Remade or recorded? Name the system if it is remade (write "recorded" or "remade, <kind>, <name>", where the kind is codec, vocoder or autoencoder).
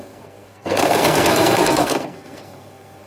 remade, codec, SNAC